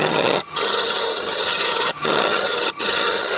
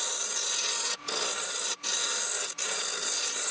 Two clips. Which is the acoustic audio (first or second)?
second